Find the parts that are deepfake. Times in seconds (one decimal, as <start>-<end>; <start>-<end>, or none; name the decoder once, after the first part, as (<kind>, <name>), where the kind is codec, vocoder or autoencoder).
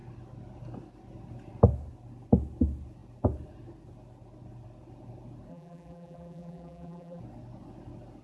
5.5-7.2 (vocoder, BigVGAN v2)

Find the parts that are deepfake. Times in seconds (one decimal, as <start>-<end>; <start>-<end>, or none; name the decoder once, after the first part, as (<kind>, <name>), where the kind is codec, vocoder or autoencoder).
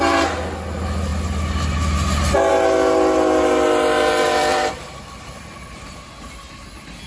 4.4-6.0 (vocoder, BigVGAN v2)